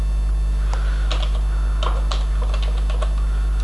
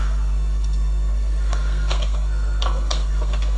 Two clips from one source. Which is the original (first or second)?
first